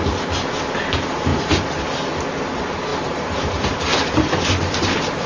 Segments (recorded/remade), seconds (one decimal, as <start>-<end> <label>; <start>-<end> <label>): 0.0-2.9 recorded; 2.9-3.8 remade; 3.8-5.3 recorded

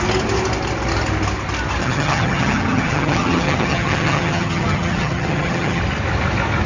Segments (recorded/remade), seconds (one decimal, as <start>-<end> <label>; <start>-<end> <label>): 0.0-1.8 recorded; 1.8-5.8 remade; 5.8-6.7 recorded

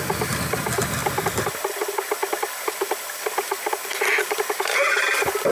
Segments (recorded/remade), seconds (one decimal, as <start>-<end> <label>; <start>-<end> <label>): 0.0-5.5 recorded

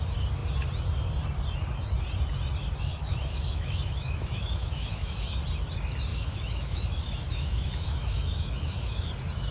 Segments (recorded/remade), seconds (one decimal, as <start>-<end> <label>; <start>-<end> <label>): 0.0-2.9 recorded; 2.9-5.4 remade; 5.4-6.1 recorded; 6.1-9.1 remade; 9.1-9.5 recorded

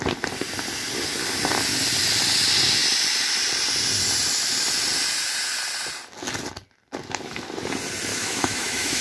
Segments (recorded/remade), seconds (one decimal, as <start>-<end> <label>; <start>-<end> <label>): 0.0-8.1 recorded; 8.1-9.0 remade

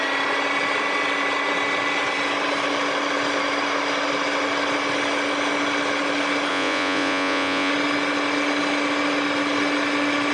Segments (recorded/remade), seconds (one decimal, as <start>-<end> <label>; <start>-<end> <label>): 0.0-6.5 recorded; 6.5-7.7 remade; 7.7-10.3 recorded

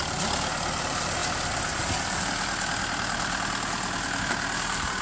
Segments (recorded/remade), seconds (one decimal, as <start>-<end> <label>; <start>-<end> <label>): 0.0-1.2 remade; 1.2-4.2 recorded; 4.2-5.0 remade

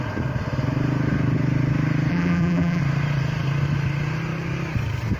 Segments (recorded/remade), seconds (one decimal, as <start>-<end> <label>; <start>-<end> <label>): 0.0-2.1 recorded; 2.1-2.8 remade; 2.8-5.2 recorded